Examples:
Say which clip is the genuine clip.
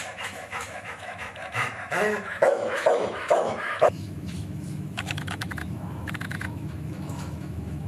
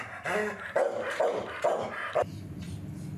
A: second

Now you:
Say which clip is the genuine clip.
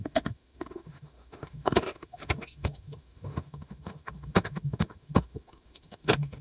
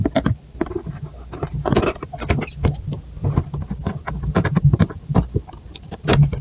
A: second